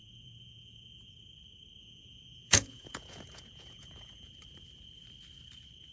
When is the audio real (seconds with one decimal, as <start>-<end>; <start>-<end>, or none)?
1.1-1.8; 4.3-5.9